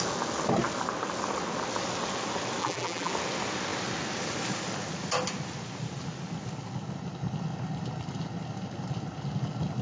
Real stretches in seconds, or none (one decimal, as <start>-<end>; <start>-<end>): 0.0-2.6; 3.1-9.8